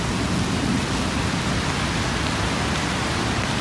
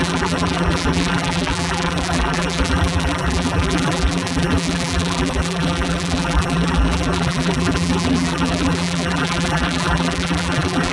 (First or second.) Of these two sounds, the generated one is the second